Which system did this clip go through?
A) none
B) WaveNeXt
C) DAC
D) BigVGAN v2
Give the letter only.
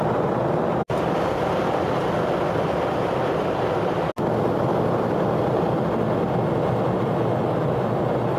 A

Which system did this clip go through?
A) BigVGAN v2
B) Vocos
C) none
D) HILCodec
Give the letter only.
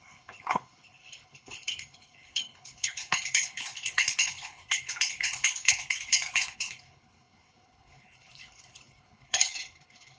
D